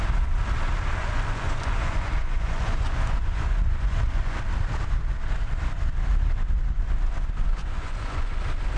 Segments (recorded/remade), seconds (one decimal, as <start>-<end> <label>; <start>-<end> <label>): 0.0-1.0 recorded; 1.0-4.4 remade; 4.4-7.6 recorded; 7.6-8.4 remade; 8.4-8.8 recorded